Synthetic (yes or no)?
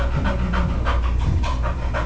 no